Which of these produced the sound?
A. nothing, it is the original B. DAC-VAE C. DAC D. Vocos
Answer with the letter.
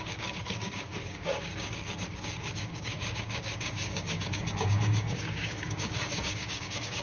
C